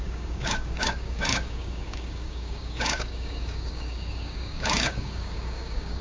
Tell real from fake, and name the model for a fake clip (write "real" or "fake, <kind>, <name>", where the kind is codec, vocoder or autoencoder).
fake, codec, DAC